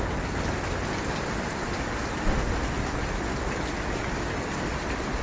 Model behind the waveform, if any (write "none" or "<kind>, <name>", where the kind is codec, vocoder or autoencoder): none